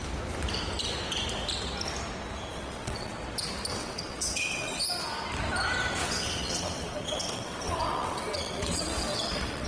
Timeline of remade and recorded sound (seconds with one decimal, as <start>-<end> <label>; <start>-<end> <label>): 0.0-2.5 recorded; 2.5-3.1 remade; 3.1-3.8 recorded; 3.8-4.8 remade; 4.8-6.0 recorded; 6.0-9.7 remade

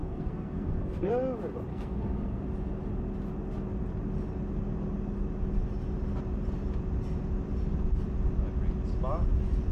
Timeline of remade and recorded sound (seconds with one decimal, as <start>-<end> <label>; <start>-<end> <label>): 0.0-1.1 remade; 1.1-1.7 recorded; 1.7-2.4 remade; 2.4-9.7 recorded

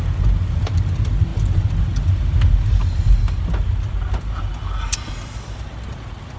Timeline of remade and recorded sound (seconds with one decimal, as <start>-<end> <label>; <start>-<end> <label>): 0.0-6.4 recorded

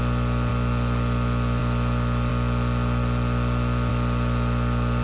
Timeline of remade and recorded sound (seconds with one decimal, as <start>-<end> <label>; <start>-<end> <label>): 0.0-5.0 recorded

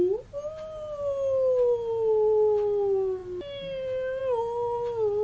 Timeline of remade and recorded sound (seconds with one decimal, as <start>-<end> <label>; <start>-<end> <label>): 0.0-5.2 recorded

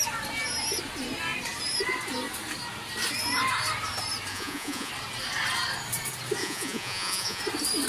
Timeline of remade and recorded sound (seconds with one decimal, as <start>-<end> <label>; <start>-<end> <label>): 0.0-4.3 recorded; 4.3-4.9 remade; 4.9-6.4 recorded; 6.4-7.4 remade; 7.4-7.9 recorded